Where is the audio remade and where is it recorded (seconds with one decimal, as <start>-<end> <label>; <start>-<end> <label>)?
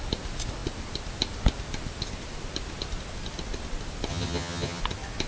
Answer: 0.0-4.1 recorded; 4.1-4.8 remade; 4.8-5.3 recorded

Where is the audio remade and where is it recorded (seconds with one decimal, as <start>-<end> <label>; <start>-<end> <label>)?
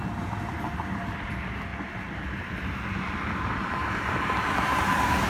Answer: 0.0-5.3 recorded